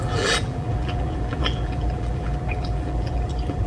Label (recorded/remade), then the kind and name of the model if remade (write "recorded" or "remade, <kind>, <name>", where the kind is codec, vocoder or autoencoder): remade, vocoder, BigVGAN v2